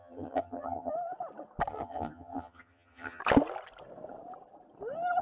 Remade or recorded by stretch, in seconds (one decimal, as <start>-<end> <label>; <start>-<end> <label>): 0.0-0.9 remade; 0.9-1.7 recorded; 1.7-3.2 remade; 3.2-5.2 recorded